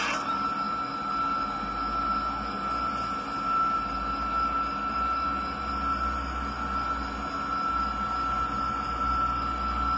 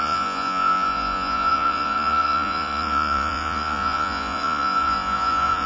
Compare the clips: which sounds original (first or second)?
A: first